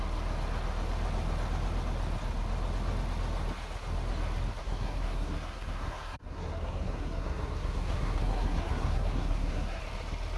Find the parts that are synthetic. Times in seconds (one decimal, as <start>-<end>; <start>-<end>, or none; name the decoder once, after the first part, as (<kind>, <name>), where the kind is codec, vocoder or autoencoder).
4.6-9.8 (codec, SNAC)